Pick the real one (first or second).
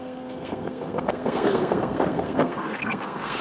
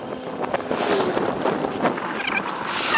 second